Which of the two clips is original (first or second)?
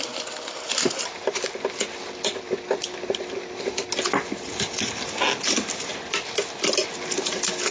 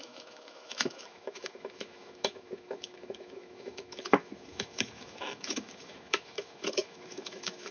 first